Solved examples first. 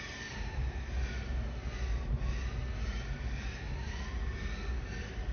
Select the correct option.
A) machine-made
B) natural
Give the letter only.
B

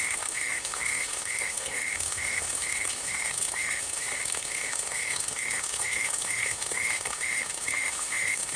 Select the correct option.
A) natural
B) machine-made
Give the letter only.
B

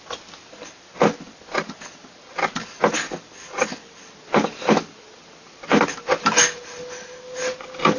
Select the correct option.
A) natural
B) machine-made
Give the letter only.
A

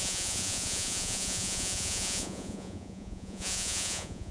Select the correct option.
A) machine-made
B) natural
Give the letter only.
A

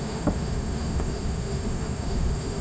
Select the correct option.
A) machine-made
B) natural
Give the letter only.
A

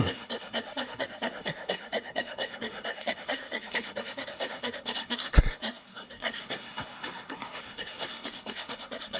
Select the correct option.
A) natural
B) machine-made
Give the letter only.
B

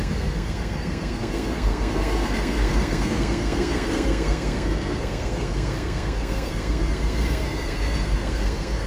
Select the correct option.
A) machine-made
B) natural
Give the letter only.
A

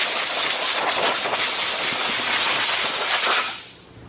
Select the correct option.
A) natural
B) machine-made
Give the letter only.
A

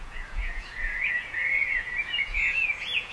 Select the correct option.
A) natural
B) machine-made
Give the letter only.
B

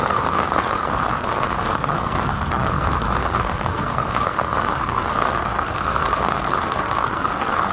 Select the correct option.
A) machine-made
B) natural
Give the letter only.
A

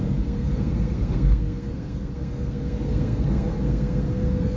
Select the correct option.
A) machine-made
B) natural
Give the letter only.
A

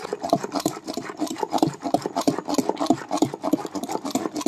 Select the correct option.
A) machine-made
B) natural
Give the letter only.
B